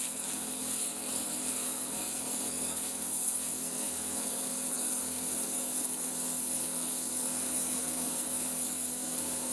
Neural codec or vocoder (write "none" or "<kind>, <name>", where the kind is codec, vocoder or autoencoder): codec, SNAC